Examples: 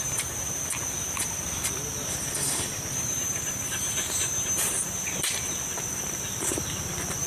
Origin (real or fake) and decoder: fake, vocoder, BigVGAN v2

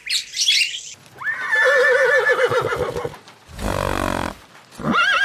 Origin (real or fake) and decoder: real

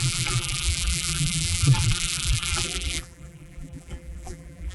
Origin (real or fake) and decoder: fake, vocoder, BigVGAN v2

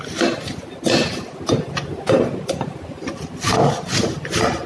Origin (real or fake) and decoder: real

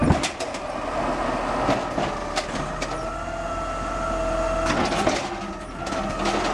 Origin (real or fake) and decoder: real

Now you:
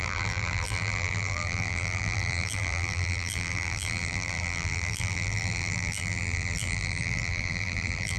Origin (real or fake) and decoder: fake, vocoder, BigVGAN v2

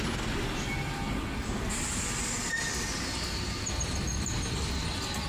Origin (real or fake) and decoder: real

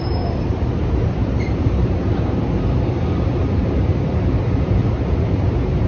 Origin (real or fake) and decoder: fake, vocoder, BigVGAN v2